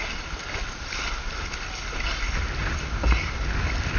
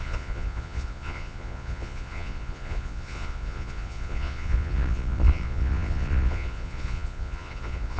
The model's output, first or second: second